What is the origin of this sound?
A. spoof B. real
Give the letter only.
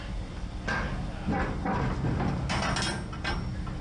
B